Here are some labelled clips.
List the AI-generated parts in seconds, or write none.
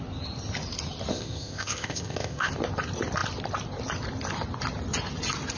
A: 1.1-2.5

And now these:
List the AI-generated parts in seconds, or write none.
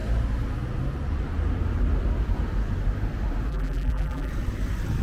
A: 3.5-4.3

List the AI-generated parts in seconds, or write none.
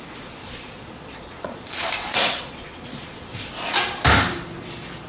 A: 0.4-3.5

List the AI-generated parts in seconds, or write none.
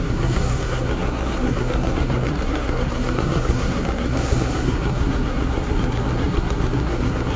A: 0.0-7.4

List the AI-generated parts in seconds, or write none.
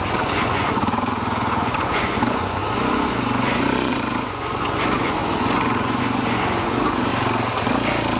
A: 0.0-7.1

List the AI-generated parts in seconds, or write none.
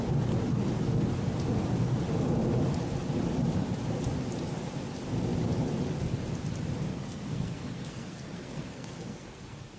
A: 6.9-9.8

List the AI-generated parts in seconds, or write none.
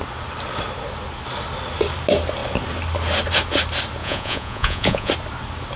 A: 4.0-5.1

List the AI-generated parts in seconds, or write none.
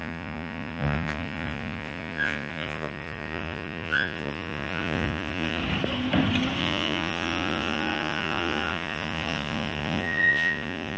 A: 0.0-5.6; 6.6-11.0